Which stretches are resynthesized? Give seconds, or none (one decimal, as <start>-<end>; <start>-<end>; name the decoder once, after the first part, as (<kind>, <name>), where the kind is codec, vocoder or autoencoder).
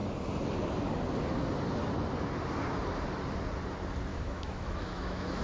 4.1-5.4 (autoencoder, DAC-VAE)